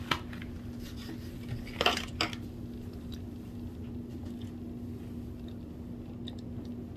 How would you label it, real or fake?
real